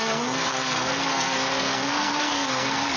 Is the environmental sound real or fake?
fake